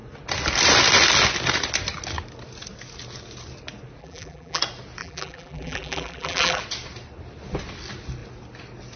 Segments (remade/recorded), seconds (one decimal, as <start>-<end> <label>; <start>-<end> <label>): 0.0-4.0 recorded; 4.0-4.6 remade; 4.6-5.0 recorded; 5.0-6.6 remade; 6.6-9.0 recorded